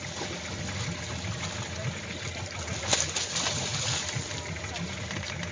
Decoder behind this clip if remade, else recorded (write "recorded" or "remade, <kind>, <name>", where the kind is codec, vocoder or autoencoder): recorded